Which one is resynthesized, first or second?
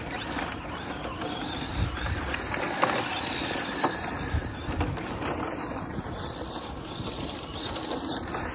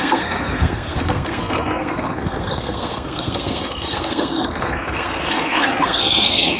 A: second